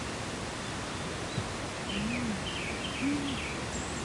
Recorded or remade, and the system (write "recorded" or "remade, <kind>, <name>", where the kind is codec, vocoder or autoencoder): recorded